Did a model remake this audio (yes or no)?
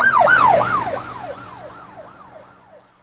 yes